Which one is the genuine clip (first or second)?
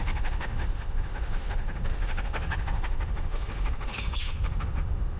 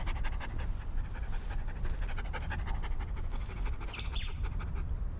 second